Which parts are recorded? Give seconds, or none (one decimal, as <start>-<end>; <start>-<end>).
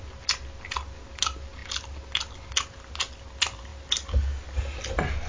0.0-5.3